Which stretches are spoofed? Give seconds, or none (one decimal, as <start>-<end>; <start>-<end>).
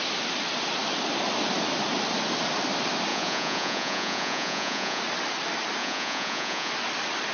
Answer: 3.1-5.0; 5.8-6.7